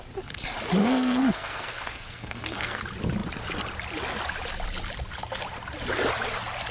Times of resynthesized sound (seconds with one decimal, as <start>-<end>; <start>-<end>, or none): 0.8-2.8